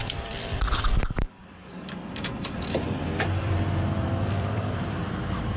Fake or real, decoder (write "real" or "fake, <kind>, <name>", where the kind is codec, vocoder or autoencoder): fake, vocoder, BigVGAN v2